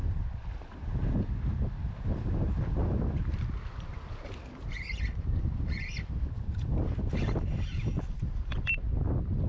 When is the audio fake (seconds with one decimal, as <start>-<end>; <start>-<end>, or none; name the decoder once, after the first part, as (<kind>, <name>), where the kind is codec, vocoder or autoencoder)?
none

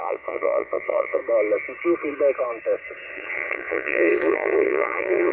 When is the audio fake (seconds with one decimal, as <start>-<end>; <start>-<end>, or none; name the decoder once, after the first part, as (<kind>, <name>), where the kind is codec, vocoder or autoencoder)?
0.0-1.2 (vocoder, Vocos); 3.1-5.3

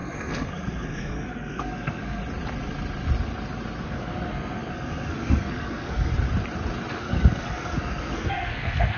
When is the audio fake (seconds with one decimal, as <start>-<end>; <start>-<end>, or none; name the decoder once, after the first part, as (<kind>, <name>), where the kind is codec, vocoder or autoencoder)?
0.0-2.2 (codec, SNAC); 3.8-6.1; 6.9-9.0

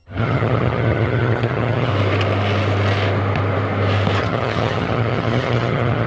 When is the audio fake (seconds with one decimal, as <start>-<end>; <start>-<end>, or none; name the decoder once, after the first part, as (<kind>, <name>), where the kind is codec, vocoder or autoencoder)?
0.0-1.9 (vocoder, HiFi-GAN); 4.2-6.1